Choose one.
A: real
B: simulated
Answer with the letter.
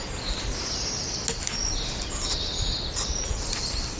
A